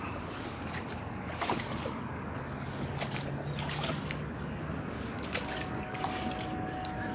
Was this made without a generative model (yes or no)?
no